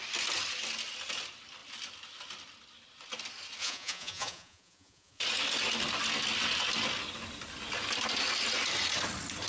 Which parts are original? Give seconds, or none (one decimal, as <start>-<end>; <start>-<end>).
0.0-3.6; 5.2-9.5